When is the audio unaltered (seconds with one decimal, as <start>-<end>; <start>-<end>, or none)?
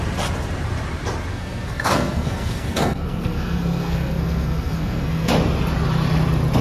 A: 0.0-1.3; 5.3-6.6